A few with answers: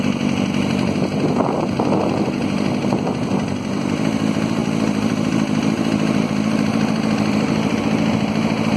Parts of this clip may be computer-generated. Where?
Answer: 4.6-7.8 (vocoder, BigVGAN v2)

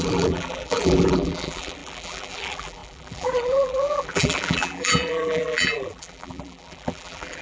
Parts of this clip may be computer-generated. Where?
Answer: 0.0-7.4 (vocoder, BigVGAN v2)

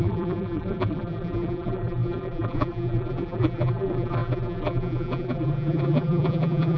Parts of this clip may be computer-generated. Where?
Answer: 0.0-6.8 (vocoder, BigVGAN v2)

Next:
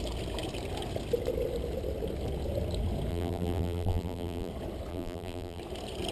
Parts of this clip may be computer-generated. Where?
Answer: 3.1-4.5 (vocoder, BigVGAN v2); 4.9-5.6